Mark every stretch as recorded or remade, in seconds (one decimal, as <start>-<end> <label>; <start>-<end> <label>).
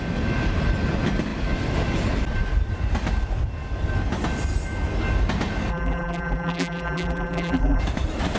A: 0.0-5.7 recorded; 5.7-7.8 remade; 7.8-8.4 recorded